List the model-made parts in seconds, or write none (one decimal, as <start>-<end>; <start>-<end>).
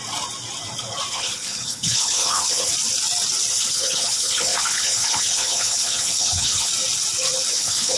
1.1-2.7; 3.5-6.7; 7.5-8.0